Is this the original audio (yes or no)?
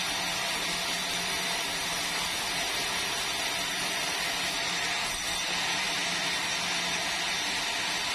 yes